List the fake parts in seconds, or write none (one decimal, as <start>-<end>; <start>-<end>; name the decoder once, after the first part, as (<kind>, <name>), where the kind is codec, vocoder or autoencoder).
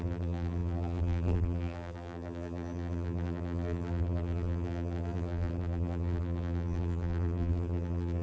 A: 0.0-8.2 (vocoder, BigVGAN v2)